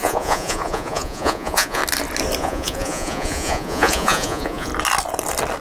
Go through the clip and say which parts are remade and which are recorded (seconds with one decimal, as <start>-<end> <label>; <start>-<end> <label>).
0.0-1.8 remade; 1.8-2.4 recorded; 2.4-4.7 remade; 4.7-5.6 recorded